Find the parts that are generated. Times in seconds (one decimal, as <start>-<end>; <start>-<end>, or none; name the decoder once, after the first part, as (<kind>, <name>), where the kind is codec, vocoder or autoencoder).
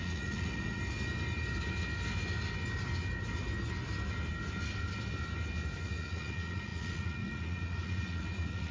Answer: 0.0-0.8 (vocoder, Vocos); 5.8-8.7